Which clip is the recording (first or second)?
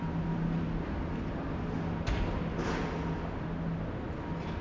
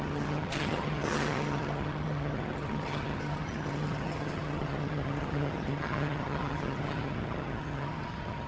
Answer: first